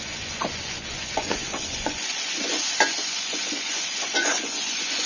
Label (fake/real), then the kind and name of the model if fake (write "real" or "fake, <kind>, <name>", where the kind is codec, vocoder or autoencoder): fake, vocoder, Vocos